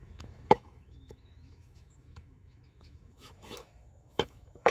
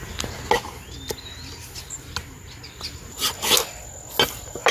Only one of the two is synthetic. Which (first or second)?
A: first